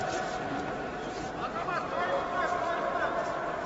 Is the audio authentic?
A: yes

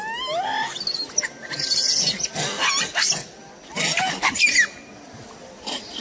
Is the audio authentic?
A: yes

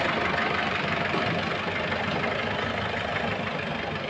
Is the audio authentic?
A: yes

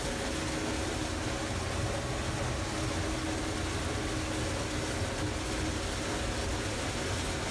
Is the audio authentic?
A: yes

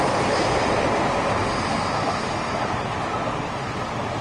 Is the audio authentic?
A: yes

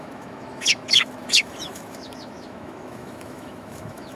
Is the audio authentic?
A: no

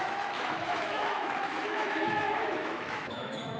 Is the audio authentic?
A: no